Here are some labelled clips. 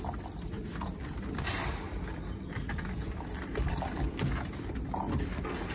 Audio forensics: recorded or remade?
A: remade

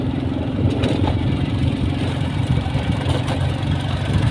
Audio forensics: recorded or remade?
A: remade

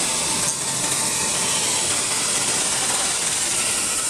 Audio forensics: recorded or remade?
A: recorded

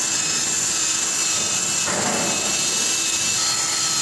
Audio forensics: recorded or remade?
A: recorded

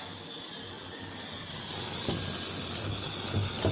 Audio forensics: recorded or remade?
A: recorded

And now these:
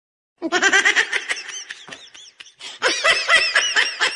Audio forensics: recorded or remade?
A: recorded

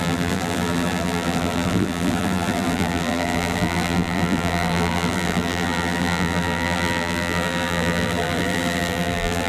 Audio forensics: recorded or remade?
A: remade